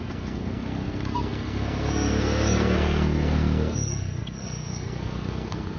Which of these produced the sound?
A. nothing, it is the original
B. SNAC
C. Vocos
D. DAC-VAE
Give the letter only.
B